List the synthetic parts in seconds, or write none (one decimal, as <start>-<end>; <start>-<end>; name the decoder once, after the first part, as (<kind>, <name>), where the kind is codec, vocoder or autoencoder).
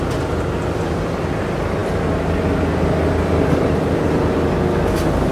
none